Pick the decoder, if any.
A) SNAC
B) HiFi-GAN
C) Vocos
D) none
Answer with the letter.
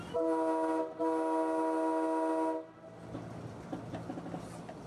D